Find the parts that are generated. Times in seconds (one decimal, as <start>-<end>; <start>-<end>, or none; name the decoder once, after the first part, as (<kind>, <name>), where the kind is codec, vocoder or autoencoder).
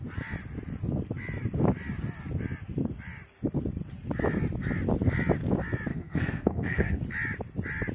5.9-7.0 (codec, SNAC)